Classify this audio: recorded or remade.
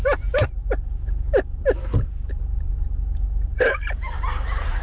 recorded